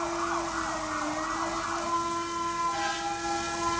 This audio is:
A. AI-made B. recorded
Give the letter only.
B